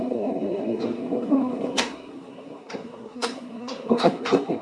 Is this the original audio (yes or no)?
no